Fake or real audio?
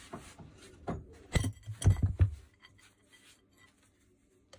real